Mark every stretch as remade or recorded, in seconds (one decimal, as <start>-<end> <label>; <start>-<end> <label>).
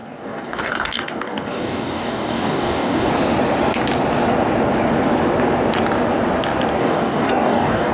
0.0-3.1 remade; 3.1-6.8 recorded; 6.8-7.9 remade